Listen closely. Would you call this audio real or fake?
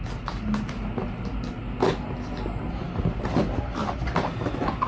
real